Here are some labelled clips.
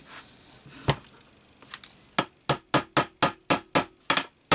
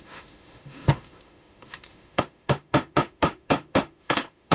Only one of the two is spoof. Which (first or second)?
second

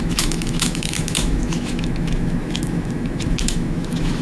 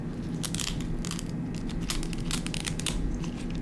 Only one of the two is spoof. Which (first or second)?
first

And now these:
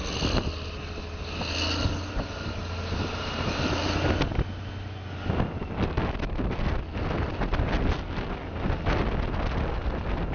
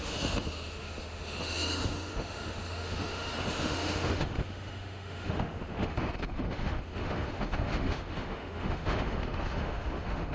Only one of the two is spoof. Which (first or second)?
second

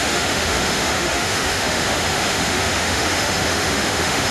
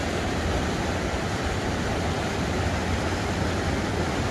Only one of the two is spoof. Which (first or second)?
first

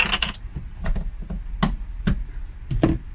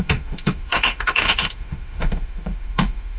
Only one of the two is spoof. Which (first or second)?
second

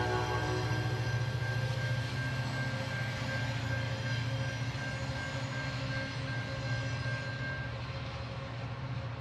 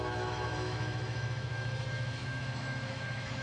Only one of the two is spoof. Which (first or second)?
second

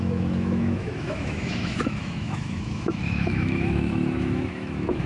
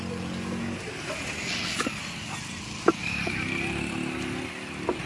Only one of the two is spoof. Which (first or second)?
first